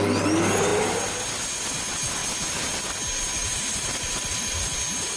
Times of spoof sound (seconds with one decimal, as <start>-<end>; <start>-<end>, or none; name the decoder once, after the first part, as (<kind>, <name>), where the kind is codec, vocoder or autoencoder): 3.4-4.6 (vocoder, BigVGAN v2)